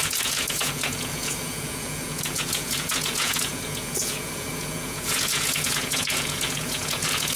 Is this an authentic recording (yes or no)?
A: no